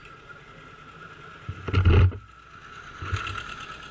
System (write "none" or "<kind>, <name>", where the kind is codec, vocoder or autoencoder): none